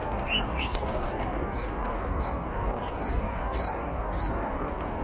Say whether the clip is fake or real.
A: fake